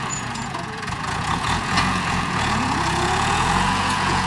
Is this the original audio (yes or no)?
no